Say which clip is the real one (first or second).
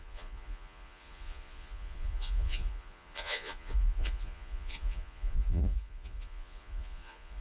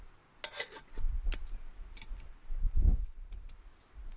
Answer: second